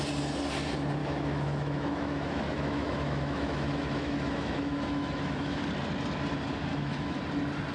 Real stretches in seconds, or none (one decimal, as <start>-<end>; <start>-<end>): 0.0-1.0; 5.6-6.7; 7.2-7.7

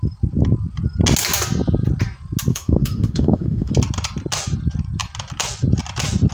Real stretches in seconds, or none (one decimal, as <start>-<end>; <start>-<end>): 0.0-2.5; 3.7-6.3

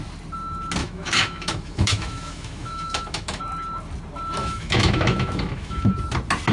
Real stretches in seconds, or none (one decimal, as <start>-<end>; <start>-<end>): 0.0-0.8; 3.4-4.4; 5.9-6.5

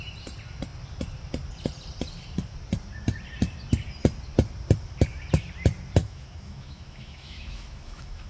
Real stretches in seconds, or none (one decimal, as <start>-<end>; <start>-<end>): 0.0-6.0

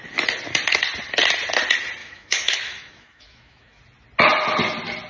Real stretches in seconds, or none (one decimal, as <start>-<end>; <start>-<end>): 0.0-2.0; 3.8-5.1